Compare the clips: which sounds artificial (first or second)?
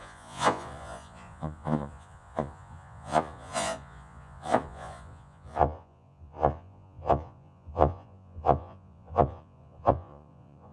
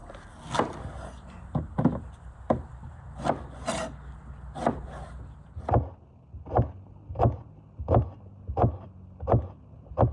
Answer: first